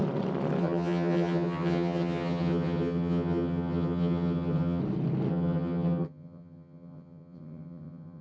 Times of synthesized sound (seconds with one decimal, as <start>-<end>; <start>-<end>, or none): 0.6-4.8; 5.3-8.2